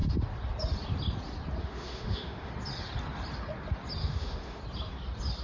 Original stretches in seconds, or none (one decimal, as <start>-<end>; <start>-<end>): 0.0-1.6; 2.5-4.0; 4.6-5.4